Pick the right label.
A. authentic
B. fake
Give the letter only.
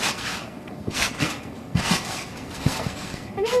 B